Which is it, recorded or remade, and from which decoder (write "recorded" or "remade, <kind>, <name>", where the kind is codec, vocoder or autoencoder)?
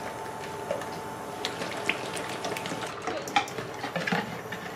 recorded